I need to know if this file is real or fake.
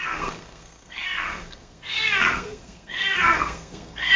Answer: fake